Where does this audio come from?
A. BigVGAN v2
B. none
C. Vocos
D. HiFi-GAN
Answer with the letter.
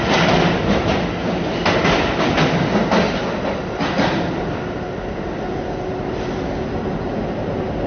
B